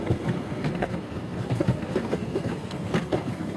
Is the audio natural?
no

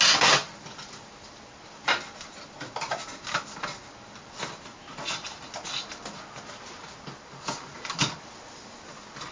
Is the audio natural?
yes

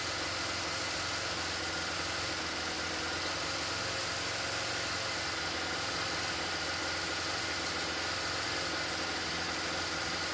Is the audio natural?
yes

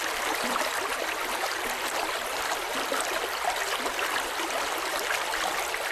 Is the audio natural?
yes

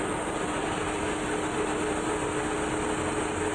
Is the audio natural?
yes